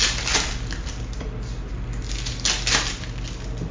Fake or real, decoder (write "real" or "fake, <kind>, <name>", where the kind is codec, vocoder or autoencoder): real